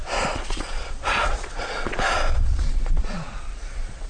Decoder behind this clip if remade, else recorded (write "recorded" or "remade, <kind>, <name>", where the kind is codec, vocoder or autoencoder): remade, vocoder, Vocos